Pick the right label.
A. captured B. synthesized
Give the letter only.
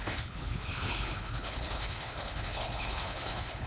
B